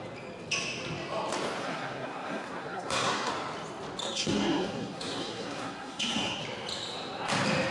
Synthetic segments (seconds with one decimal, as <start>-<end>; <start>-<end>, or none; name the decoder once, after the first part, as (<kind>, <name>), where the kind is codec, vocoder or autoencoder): 1.6-3.3 (codec, SNAC); 4.0-6.4